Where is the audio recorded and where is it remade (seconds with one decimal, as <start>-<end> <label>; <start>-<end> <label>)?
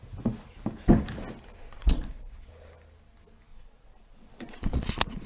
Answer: 0.0-1.6 recorded; 1.6-2.5 remade; 2.5-3.5 recorded; 3.5-5.3 remade